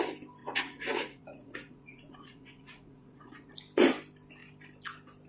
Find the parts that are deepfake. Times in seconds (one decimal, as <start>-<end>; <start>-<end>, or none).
0.4-3.5